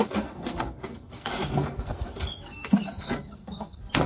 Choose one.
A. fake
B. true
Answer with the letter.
A